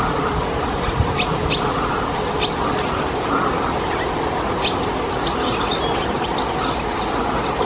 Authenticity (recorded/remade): recorded